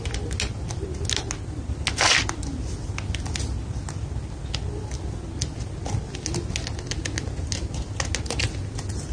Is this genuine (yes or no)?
yes